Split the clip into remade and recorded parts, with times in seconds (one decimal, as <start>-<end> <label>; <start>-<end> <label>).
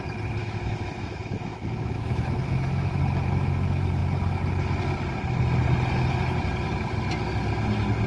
0.0-0.4 recorded; 0.4-3.0 remade; 3.0-8.1 recorded